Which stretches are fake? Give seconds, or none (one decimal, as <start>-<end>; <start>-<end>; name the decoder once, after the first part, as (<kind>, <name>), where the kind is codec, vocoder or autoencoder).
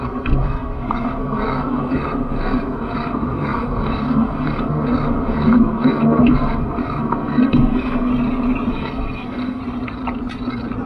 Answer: 0.0-8.1 (codec, SNAC); 8.7-9.6